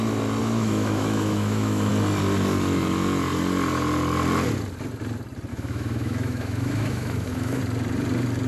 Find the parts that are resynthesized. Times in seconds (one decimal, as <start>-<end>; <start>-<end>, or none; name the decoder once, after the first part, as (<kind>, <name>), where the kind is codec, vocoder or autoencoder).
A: 0.4-1.9 (autoencoder, DAC-VAE); 5.5-7.6